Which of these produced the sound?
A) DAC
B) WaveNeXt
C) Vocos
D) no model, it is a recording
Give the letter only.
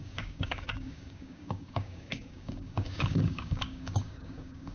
A